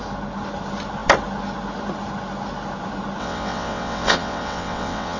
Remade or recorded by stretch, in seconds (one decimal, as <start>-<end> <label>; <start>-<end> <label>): 0.0-3.2 recorded; 3.2-5.2 remade